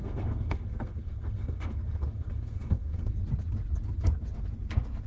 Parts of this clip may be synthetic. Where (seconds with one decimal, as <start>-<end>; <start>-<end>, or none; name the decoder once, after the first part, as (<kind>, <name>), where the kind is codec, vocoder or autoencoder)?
0.0-3.1 (codec, SNAC)